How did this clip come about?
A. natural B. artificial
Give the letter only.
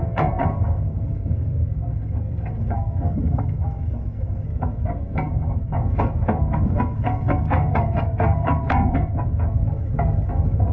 B